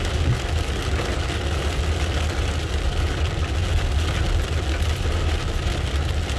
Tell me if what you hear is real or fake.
real